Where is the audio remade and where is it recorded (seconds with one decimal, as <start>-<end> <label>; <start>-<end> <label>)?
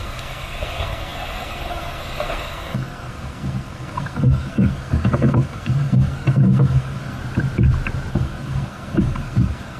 0.0-7.2 remade; 7.2-8.1 recorded; 8.1-9.8 remade